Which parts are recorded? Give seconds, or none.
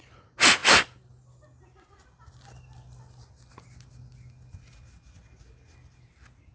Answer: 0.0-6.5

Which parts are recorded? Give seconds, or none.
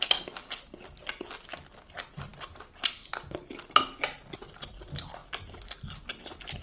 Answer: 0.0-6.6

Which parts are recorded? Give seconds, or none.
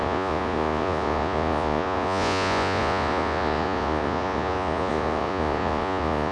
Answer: none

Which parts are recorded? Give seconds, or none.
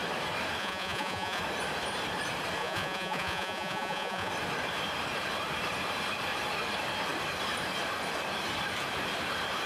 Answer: 0.0-0.6; 1.4-2.6; 4.3-9.7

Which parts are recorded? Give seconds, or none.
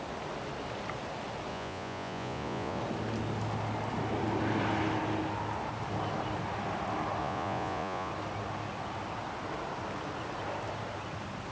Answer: 0.0-1.5; 2.8-7.2; 8.1-11.5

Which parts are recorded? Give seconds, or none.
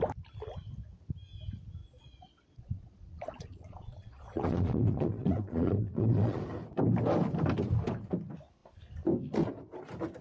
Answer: 0.0-1.8; 6.4-10.2